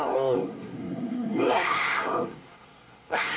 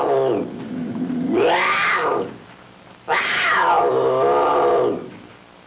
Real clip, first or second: second